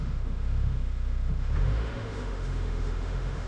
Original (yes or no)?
no